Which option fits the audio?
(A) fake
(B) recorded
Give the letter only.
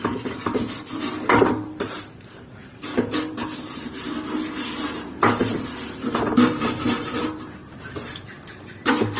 A